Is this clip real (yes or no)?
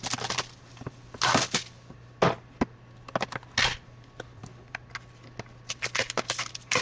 yes